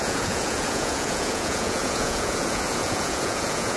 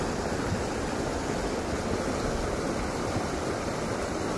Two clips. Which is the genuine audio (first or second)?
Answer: second